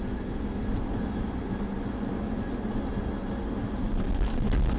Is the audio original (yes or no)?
yes